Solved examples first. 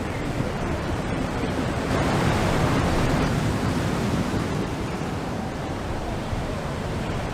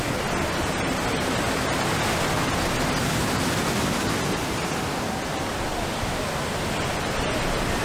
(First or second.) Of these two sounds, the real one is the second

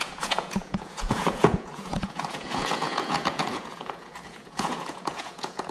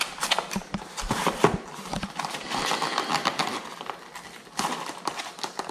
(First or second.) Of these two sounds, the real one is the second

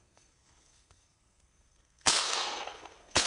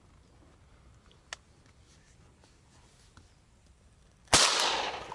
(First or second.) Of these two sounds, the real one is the second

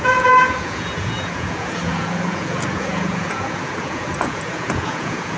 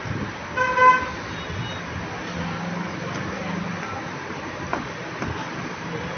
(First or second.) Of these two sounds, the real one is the second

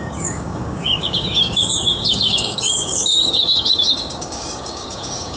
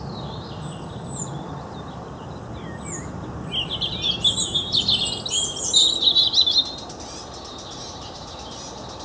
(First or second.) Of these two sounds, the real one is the second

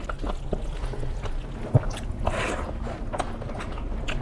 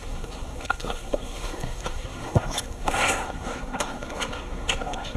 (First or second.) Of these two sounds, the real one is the first